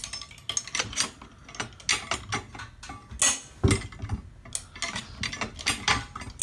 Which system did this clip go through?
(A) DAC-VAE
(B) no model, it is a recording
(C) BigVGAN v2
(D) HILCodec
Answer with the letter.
B